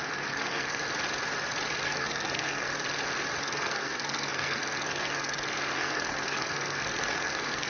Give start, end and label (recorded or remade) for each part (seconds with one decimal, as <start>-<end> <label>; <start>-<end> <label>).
0.0-0.8 remade; 0.8-1.8 recorded; 1.8-2.7 remade; 2.7-3.4 recorded; 3.4-7.7 remade